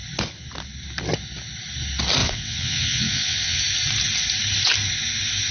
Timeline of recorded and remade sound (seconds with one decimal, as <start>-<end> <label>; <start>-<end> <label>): 0.0-2.2 recorded; 2.2-3.6 remade; 3.6-5.5 recorded